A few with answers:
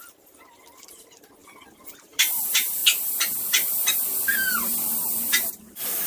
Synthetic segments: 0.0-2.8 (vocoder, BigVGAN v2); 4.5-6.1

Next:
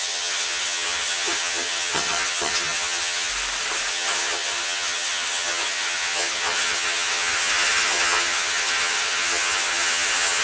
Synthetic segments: 0.0-3.3 (vocoder, HiFi-GAN); 3.9-10.4

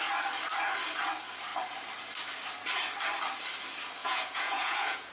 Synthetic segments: 4.0-5.1 (vocoder, Vocos)